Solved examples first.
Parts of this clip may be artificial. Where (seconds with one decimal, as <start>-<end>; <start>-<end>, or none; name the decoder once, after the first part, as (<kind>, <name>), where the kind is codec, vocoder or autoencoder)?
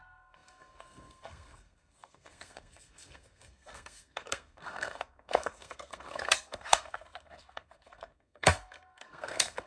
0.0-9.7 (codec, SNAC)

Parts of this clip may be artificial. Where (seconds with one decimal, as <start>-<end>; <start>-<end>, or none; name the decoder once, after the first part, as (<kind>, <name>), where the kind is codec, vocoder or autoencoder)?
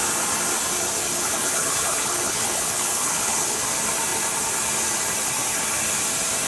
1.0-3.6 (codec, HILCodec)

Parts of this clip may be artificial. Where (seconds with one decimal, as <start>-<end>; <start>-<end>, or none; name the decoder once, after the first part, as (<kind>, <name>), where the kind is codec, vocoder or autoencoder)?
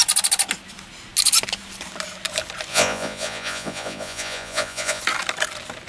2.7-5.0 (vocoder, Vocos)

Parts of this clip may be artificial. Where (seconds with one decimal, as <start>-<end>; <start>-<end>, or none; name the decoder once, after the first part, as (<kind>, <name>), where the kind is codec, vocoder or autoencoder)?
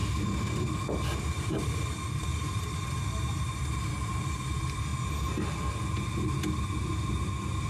none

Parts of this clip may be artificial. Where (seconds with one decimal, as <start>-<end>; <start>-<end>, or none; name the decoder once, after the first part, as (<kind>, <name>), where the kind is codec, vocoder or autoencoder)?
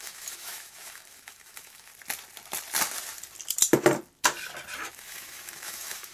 0.0-1.9 (autoencoder, DAC-VAE); 4.9-6.1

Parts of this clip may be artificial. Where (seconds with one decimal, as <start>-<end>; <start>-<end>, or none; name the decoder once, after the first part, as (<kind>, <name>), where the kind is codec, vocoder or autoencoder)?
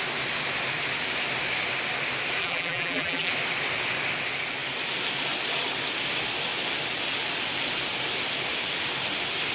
2.4-3.3 (vocoder, BigVGAN v2)